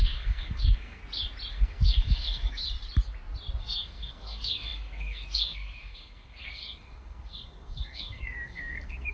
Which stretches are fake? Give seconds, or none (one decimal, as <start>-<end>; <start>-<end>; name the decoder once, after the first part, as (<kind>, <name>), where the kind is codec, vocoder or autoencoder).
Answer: 0.0-1.0 (codec, SNAC); 1.5-2.6; 3.6-9.1